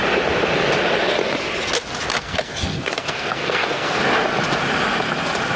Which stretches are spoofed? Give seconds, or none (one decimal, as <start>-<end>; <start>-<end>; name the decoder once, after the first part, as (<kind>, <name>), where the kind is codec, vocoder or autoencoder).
2.1-4.0 (codec, SNAC)